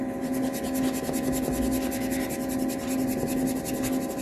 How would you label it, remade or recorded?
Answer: recorded